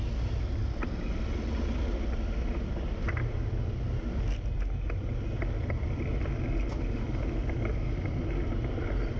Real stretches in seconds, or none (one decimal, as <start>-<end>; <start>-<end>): 0.0-9.2